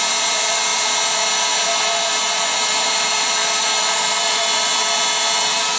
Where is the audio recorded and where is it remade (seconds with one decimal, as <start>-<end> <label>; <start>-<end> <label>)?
0.0-5.8 recorded